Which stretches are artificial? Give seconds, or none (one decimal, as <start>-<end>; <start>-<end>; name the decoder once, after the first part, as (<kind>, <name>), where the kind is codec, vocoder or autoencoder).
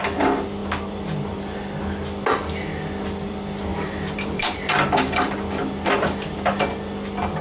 3.7-5.3 (vocoder, BigVGAN v2)